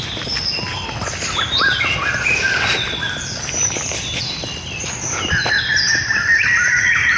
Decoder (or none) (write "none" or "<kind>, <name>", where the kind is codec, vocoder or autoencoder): none